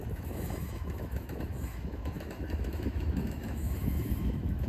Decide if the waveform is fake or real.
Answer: fake